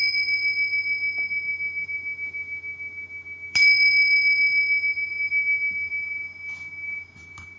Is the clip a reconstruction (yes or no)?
no